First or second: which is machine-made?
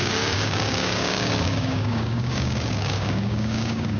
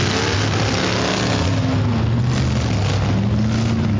first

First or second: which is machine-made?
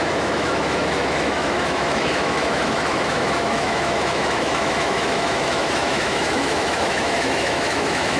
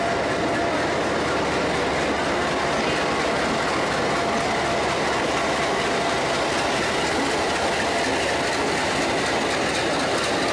first